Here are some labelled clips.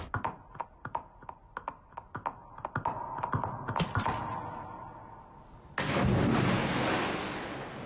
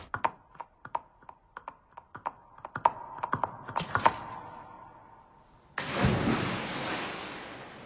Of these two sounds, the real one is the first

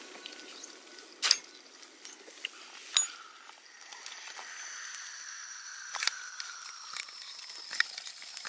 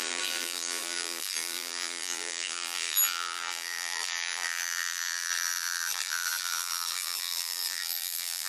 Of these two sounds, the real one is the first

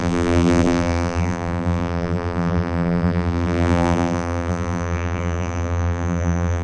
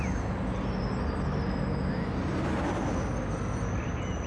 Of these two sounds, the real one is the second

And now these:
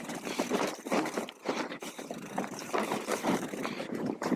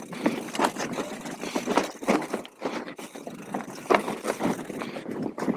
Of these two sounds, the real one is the second